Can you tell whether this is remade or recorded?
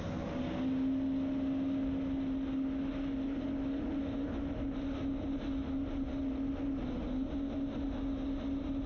recorded